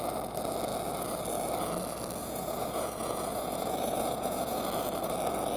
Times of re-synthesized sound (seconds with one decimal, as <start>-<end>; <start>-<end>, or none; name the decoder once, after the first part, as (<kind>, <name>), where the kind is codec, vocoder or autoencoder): 2.2-4.6 (vocoder, Vocos)